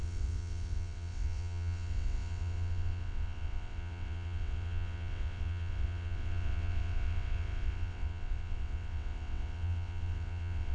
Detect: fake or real fake